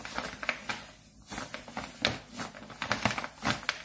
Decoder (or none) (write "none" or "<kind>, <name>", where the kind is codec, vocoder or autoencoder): none